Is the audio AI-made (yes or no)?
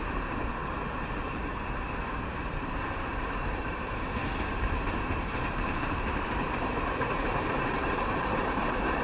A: yes